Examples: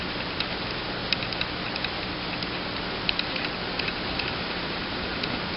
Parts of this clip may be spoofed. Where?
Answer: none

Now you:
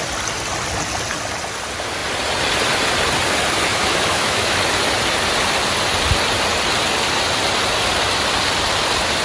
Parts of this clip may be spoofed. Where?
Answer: 3.7-4.6 (autoencoder, DAC-VAE)

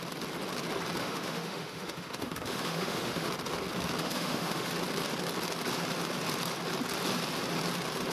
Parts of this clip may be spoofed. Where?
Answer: 1.0-3.3 (autoencoder, DAC-VAE); 4.0-4.7